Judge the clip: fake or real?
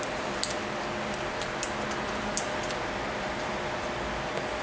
real